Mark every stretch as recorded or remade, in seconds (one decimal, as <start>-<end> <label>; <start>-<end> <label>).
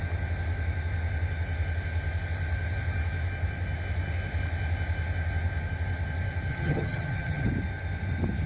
0.0-6.5 recorded; 6.5-7.5 remade; 7.5-8.5 recorded